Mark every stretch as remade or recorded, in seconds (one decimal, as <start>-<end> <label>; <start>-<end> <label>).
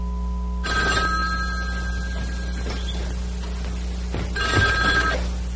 0.0-5.6 recorded